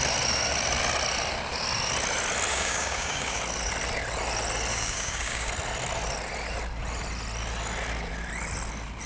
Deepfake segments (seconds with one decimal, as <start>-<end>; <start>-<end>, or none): 2.5-3.4; 4.7-5.5